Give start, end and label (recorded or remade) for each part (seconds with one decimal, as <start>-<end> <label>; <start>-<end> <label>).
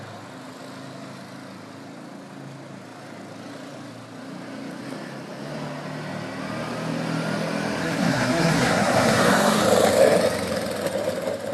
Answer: 0.0-7.8 recorded; 7.8-9.6 remade; 9.6-11.5 recorded